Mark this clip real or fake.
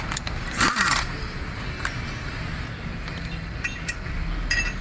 real